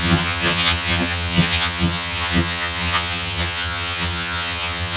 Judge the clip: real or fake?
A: fake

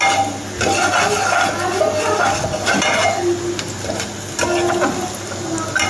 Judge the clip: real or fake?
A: real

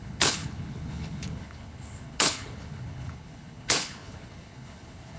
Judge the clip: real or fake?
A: fake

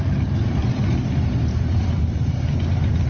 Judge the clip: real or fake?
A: fake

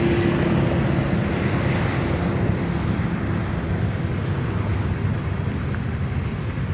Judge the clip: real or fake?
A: real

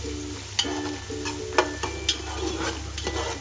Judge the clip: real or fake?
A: real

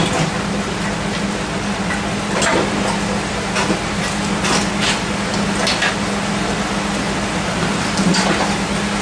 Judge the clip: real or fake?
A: real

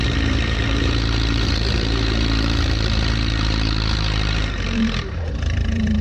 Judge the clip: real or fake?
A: fake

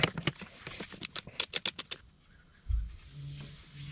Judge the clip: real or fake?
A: real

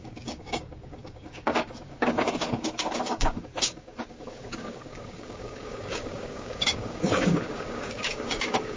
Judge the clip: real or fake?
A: fake